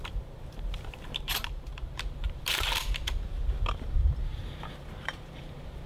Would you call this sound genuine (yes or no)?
no